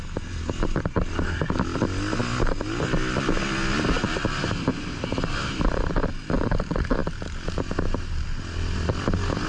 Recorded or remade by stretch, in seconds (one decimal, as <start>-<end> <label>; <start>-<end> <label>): 0.0-9.5 recorded